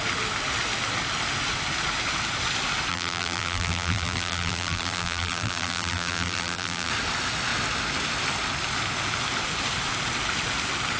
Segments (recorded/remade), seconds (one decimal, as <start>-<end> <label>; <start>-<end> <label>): 0.0-2.9 recorded; 2.9-6.9 remade; 6.9-11.0 recorded